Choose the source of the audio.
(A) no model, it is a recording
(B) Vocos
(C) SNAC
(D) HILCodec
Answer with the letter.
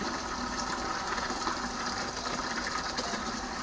A